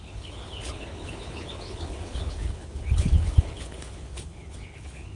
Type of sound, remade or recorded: remade